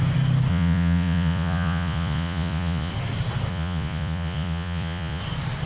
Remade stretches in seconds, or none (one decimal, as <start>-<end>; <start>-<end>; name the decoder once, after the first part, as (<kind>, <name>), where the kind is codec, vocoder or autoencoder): 0.5-2.9 (vocoder, Vocos); 3.5-5.2